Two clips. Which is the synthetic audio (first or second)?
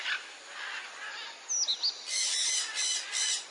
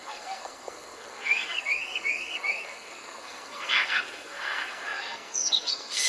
second